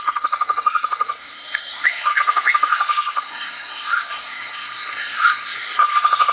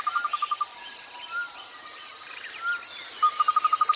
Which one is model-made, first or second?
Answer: first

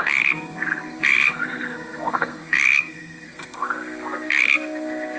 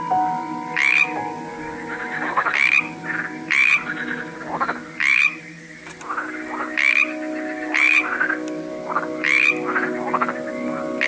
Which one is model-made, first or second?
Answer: first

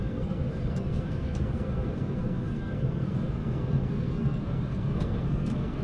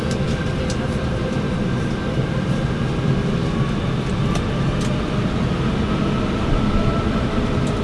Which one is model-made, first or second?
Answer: first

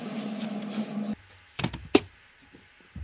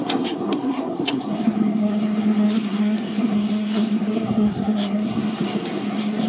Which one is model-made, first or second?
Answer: second